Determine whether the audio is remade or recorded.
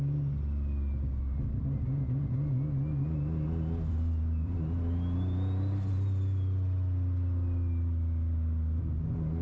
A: recorded